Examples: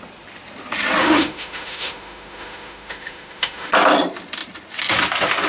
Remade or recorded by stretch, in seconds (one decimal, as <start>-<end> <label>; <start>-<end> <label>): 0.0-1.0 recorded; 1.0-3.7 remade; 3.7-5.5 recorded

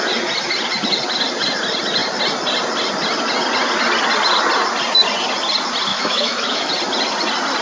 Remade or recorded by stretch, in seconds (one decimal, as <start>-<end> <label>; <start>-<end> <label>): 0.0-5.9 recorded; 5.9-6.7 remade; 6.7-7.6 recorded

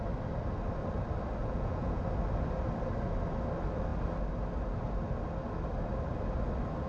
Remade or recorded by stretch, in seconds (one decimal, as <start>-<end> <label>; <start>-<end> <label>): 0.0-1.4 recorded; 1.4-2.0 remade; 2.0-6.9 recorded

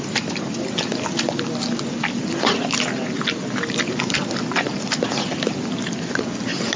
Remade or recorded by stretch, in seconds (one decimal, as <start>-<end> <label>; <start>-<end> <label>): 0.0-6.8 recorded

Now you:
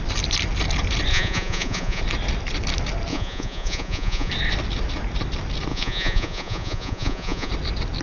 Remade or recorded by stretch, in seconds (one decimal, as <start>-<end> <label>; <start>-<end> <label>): 0.0-1.1 recorded; 1.1-2.0 remade; 2.0-3.1 recorded; 3.1-4.3 remade; 4.3-5.7 recorded; 5.7-7.5 remade; 7.5-8.0 recorded